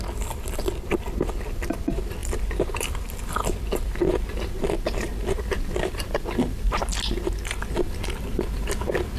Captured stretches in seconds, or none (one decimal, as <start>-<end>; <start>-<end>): 6.9-7.6